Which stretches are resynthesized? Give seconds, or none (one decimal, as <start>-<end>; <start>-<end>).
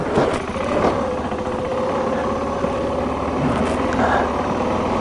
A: 1.7-2.2